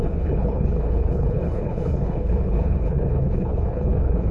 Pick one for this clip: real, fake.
fake